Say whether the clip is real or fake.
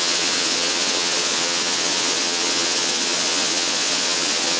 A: fake